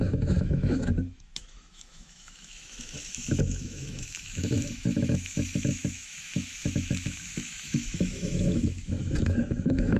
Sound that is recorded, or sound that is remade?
remade